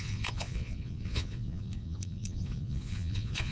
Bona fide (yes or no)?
no